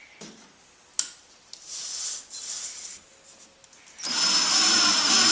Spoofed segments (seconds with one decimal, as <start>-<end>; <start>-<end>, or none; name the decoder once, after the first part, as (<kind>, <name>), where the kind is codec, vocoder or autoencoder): 2.3-3.1 (vocoder, BigVGAN v2); 4.4-5.3